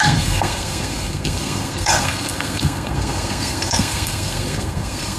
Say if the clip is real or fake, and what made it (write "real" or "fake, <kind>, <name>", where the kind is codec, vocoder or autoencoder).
fake, codec, SNAC